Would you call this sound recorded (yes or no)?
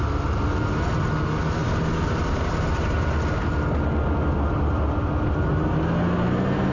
yes